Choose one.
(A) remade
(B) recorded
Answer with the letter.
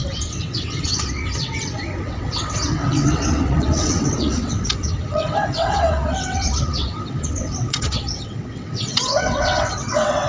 A